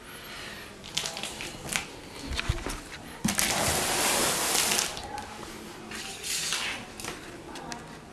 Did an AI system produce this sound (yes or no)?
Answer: no